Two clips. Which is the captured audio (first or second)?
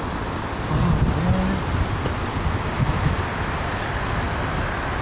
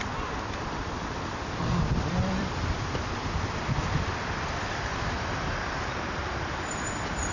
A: first